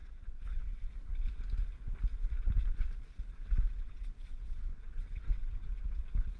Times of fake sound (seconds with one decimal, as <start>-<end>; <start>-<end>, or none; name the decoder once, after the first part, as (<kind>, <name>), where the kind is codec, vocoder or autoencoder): 0.0-0.9 (vocoder, WaveNeXt); 3.7-6.0